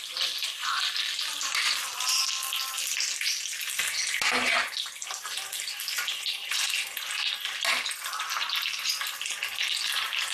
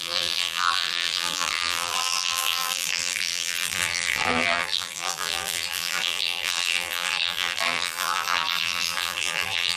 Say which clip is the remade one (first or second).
second